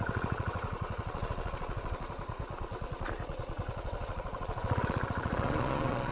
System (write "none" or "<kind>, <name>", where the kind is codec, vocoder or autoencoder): vocoder, Vocos